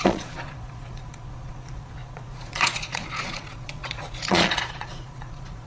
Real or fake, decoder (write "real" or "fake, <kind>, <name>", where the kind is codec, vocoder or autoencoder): fake, vocoder, Vocos